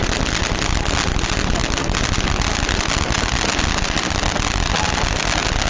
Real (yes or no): yes